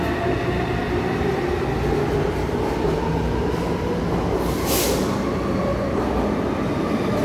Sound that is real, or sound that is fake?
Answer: real